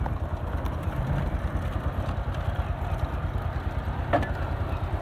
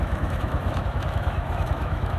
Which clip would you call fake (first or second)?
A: second